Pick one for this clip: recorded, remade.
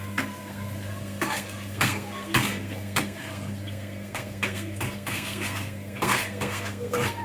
remade